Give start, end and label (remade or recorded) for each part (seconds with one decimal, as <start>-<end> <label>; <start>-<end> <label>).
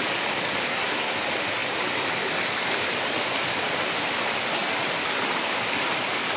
0.0-0.7 recorded; 0.7-1.2 remade; 1.2-6.4 recorded